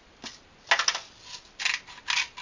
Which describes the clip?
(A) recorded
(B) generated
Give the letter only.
A